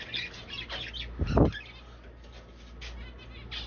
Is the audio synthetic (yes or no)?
no